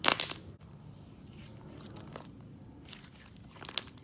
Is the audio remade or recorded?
recorded